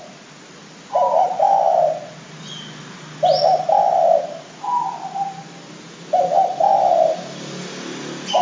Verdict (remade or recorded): recorded